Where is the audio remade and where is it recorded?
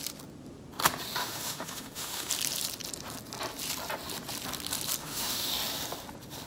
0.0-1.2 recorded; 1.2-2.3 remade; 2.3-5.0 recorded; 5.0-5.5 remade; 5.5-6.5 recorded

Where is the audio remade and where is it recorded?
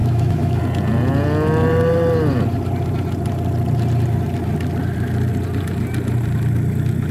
0.0-0.6 remade; 0.6-7.1 recorded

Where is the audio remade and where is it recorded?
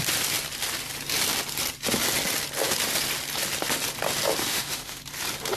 0.0-4.5 recorded; 4.5-5.0 remade; 5.0-5.6 recorded